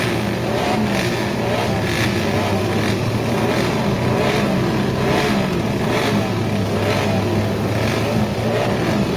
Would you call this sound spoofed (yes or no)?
no